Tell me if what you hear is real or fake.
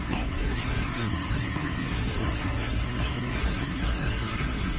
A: fake